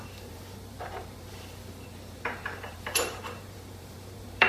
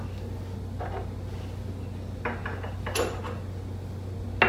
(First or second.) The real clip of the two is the second